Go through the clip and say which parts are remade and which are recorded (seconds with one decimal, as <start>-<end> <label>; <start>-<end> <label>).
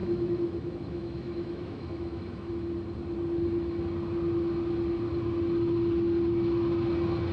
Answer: 0.0-2.5 remade; 2.5-7.3 recorded